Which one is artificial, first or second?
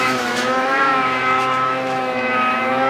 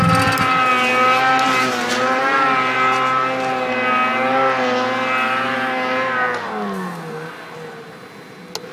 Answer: first